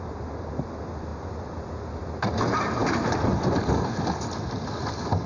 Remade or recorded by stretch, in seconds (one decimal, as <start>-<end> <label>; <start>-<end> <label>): 0.0-1.1 recorded; 1.1-2.2 remade; 2.2-5.3 recorded